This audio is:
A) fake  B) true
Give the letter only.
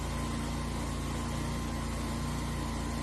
B